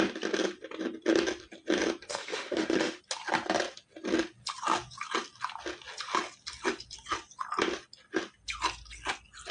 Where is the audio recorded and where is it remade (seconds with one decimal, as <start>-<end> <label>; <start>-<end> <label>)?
0.0-2.1 recorded; 2.1-3.0 remade; 3.0-9.5 recorded